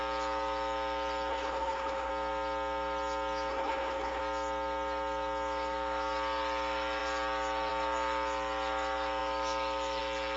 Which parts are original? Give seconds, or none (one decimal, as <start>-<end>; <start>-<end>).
0.0-1.3; 2.1-3.5; 4.2-10.4